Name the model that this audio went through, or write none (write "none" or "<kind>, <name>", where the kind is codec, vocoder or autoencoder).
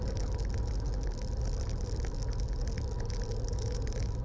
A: none